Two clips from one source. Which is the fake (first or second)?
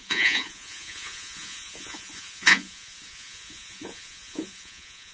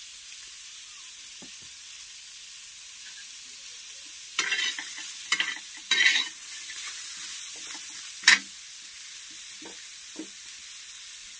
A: first